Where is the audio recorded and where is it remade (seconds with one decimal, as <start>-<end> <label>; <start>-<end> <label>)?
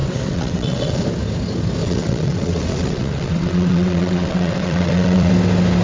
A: 0.0-1.0 remade; 1.0-1.8 recorded; 1.8-5.3 remade; 5.3-5.8 recorded